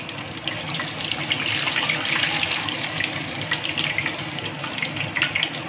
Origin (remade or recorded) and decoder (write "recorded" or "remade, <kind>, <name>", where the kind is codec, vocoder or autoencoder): recorded